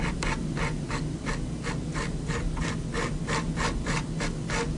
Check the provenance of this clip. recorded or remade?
recorded